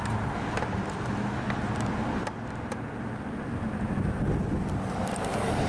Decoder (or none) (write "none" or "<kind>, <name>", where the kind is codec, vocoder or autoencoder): none